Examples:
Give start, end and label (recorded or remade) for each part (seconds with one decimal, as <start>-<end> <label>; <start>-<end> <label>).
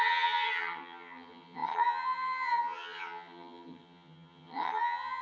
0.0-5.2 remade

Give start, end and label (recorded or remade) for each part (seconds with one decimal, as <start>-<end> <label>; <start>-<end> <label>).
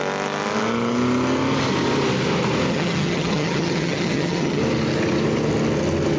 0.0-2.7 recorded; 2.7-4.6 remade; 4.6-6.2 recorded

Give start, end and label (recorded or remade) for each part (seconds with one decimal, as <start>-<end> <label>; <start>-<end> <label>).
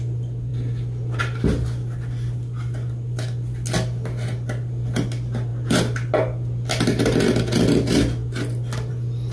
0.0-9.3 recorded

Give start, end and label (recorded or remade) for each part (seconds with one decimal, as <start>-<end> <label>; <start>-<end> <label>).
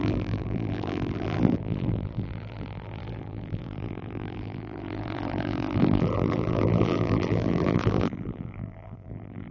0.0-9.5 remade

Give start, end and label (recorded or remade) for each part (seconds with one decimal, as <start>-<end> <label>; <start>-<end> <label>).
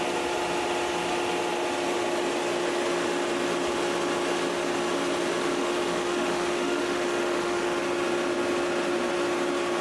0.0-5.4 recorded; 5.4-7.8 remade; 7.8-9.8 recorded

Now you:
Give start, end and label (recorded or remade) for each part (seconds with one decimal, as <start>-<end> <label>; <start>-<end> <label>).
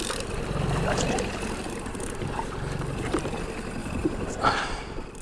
0.0-3.8 recorded; 3.8-4.4 remade; 4.4-5.2 recorded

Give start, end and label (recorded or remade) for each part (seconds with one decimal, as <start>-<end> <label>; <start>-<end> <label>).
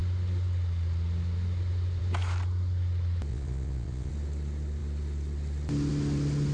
0.0-3.3 recorded; 3.3-4.1 remade; 4.1-6.5 recorded